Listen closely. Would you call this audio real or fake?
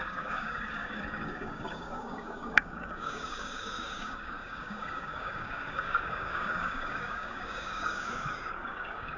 fake